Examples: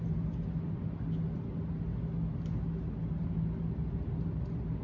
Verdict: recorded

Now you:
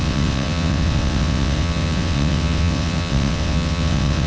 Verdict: remade